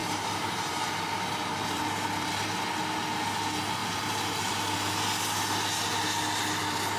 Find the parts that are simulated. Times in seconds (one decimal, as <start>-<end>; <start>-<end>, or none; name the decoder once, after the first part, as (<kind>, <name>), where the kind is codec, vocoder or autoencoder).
0.0-1.8 (vocoder, BigVGAN v2); 3.8-4.5